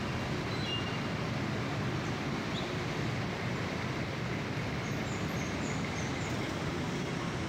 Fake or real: real